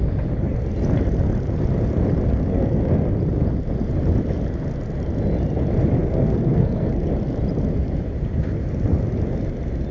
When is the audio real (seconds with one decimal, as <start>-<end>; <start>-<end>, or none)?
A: 0.0-2.3; 2.9-6.0; 7.1-9.9